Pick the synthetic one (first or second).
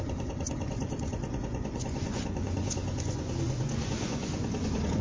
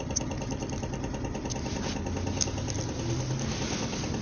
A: first